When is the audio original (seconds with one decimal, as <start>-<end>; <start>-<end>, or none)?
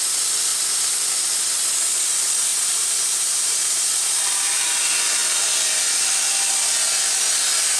0.0-2.5; 4.7-7.8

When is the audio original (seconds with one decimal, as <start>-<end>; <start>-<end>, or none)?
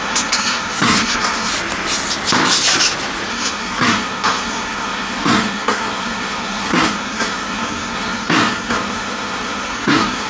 1.5-3.3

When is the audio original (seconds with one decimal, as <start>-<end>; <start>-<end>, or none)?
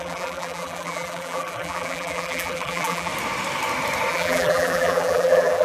3.1-4.1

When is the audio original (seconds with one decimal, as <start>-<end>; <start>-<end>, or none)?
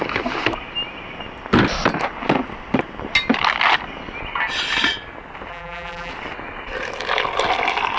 0.0-5.5; 6.1-8.0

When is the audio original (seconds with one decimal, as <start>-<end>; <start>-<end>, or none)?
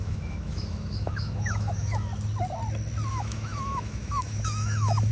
2.1-3.1